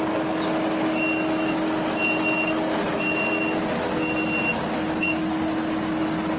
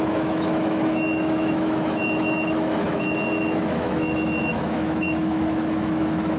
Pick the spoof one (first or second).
second